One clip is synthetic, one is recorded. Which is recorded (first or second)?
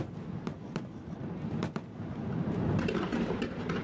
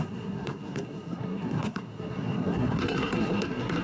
first